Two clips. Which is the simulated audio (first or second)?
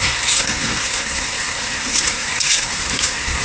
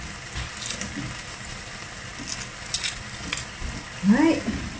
first